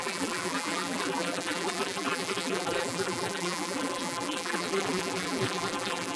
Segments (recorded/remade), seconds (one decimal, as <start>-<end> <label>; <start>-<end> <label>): 0.0-6.2 remade

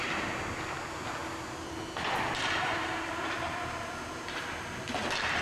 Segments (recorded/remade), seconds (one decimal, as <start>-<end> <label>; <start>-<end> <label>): 0.0-1.2 recorded; 1.2-4.4 remade; 4.4-5.4 recorded

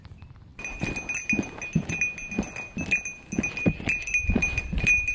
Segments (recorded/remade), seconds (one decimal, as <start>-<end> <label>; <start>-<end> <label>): 0.0-0.5 remade; 0.5-3.5 recorded; 3.5-5.1 remade